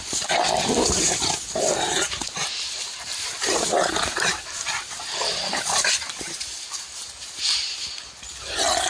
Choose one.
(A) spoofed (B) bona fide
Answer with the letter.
A